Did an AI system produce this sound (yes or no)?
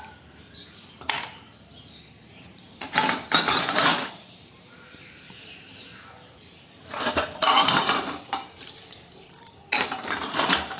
yes